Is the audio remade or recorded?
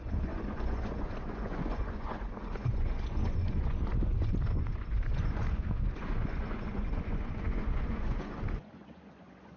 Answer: remade